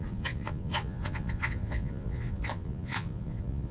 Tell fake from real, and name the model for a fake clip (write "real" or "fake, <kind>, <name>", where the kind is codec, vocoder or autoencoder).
fake, vocoder, Vocos